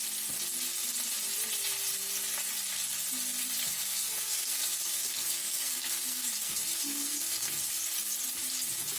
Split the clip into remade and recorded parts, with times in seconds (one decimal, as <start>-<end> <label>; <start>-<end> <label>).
0.0-3.6 recorded; 3.6-7.7 remade; 7.7-9.0 recorded